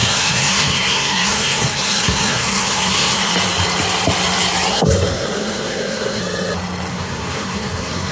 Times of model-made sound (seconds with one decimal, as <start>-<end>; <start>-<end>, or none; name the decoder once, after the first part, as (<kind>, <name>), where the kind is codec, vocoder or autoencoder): 0.0-3.3 (codec, SNAC); 4.7-6.2; 6.9-8.1